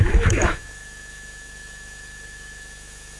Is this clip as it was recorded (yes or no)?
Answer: no